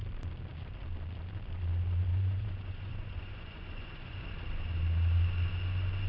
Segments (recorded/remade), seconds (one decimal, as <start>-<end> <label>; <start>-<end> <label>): 0.0-2.1 recorded; 2.1-4.2 remade; 4.2-6.1 recorded